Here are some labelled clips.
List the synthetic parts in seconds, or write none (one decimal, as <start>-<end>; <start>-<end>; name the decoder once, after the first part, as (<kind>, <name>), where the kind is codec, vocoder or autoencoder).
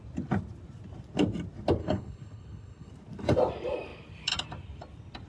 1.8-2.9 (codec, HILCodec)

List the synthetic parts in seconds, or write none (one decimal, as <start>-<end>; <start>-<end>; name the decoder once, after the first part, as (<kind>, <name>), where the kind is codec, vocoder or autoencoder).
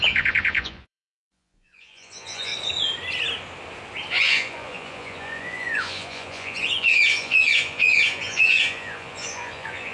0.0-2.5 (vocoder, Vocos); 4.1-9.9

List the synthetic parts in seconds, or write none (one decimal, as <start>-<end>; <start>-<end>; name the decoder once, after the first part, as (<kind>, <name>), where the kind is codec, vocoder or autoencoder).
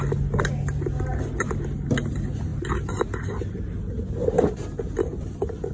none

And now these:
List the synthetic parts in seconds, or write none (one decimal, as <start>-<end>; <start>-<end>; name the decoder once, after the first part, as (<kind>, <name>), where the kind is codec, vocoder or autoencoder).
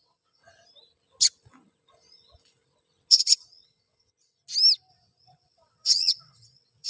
0.0-0.4 (vocoder, WaveNeXt); 3.1-4.1; 4.9-6.9